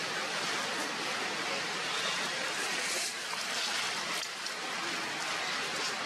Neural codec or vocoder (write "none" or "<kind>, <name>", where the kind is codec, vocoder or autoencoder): none